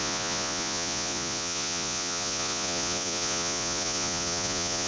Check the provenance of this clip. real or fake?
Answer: fake